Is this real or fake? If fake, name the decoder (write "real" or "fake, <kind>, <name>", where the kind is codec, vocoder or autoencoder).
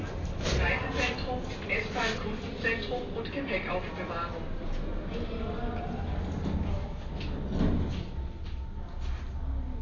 real